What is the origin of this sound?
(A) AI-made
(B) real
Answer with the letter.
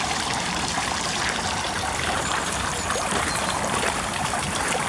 A